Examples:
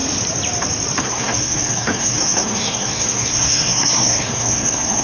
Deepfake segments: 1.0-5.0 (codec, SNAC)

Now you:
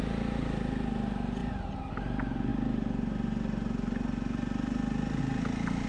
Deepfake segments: none

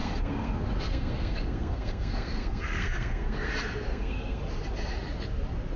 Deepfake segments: 0.0-3.5 (codec, SNAC); 3.9-4.4

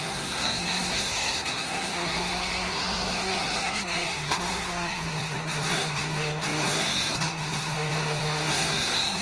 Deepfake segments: 0.0-9.2 (codec, SNAC)

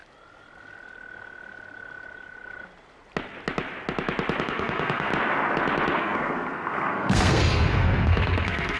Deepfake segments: 4.4-5.1 (codec, SNAC); 6.0-8.8

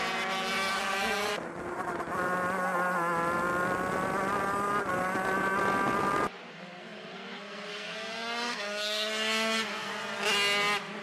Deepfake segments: 0.8-1.3 (codec, SNAC); 6.5-9.9